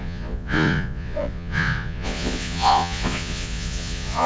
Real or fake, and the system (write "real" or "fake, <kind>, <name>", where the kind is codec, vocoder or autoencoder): fake, vocoder, Vocos